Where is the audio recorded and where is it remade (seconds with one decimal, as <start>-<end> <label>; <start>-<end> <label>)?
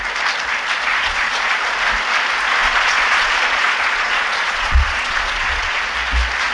0.0-0.9 recorded; 0.9-1.7 remade; 1.7-2.6 recorded; 2.6-5.8 remade; 5.8-6.5 recorded